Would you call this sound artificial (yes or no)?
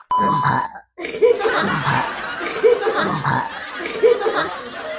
no